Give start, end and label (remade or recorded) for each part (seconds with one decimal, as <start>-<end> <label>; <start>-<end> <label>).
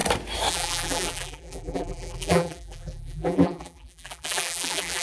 0.0-0.5 recorded; 0.5-5.0 remade